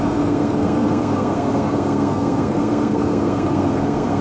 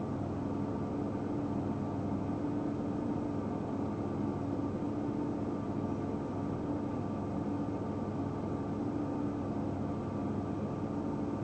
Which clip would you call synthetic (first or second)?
first